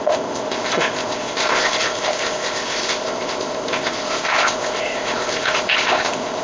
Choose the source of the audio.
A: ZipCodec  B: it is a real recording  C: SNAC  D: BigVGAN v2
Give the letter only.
A